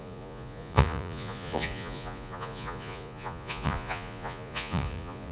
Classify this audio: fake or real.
fake